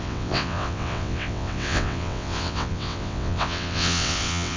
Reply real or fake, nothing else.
fake